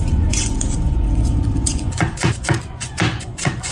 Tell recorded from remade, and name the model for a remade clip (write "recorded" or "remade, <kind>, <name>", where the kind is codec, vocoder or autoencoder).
remade, vocoder, Vocos